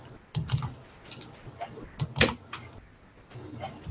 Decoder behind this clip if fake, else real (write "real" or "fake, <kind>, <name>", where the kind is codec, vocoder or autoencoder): real